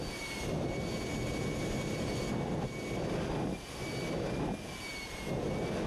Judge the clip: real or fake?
real